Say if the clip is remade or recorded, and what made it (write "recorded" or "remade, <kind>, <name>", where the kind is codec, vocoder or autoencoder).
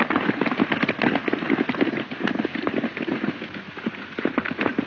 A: recorded